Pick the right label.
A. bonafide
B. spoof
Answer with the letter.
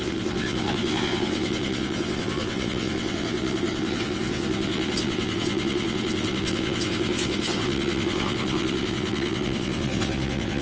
B